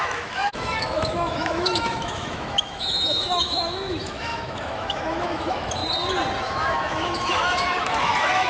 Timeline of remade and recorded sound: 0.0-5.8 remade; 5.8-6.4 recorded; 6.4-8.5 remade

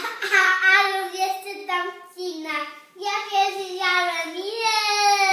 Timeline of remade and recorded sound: 0.0-0.5 recorded; 0.5-1.1 remade; 1.1-5.3 recorded

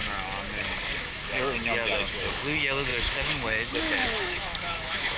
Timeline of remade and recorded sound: 0.0-1.0 recorded; 1.0-5.2 remade

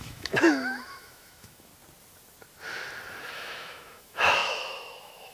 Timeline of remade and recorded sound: 0.0-1.7 remade; 1.7-3.3 recorded; 3.3-5.3 remade

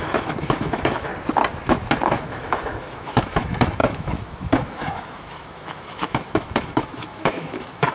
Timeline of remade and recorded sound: 0.0-1.1 remade; 1.1-2.1 recorded; 2.1-7.9 remade